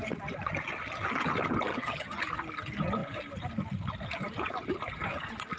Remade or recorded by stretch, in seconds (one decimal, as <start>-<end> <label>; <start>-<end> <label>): 0.0-1.7 recorded; 1.7-2.2 remade; 2.2-5.6 recorded